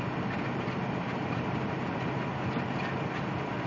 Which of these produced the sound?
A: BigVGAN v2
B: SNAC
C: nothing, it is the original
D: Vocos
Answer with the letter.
C